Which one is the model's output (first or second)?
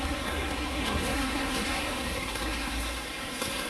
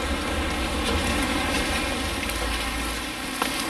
first